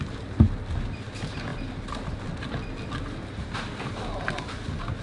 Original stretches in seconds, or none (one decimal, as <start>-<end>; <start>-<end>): 0.0-5.0